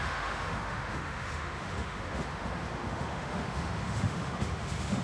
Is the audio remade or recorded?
remade